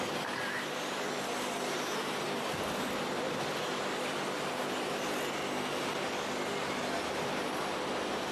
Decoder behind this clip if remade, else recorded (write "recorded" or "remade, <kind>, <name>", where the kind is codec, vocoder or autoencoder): recorded